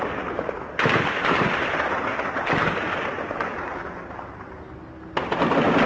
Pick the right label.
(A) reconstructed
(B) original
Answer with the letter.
B